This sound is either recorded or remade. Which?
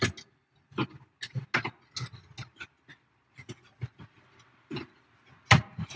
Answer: recorded